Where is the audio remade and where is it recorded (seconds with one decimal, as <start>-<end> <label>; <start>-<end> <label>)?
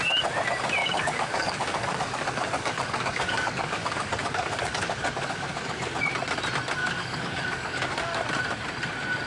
0.0-0.8 recorded; 0.8-6.0 remade; 6.0-6.8 recorded; 6.8-8.2 remade; 8.2-9.3 recorded